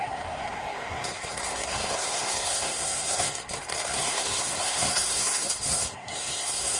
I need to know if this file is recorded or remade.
remade